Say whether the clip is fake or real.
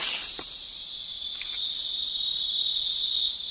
real